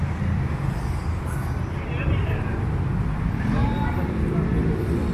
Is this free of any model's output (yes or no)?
no